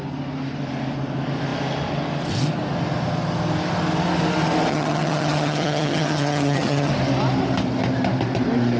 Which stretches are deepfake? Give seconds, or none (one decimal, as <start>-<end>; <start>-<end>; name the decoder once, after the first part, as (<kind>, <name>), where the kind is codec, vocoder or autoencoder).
4.7-6.9 (vocoder, HiFi-GAN)